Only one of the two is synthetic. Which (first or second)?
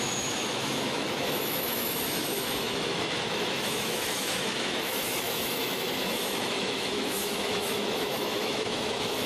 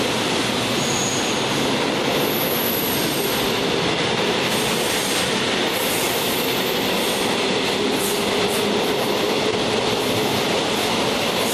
first